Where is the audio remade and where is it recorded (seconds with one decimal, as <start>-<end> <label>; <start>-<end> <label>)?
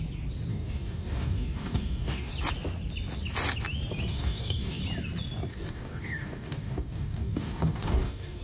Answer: 0.0-0.5 recorded; 0.5-2.3 remade; 2.3-4.1 recorded; 4.1-4.8 remade; 4.8-5.5 recorded; 5.5-8.4 remade